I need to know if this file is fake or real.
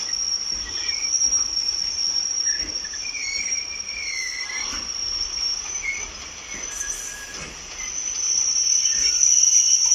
real